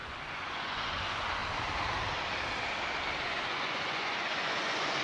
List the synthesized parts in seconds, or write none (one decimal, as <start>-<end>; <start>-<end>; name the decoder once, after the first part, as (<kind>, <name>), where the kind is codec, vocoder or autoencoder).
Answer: 0.0-1.4 (vocoder, Vocos); 3.2-5.0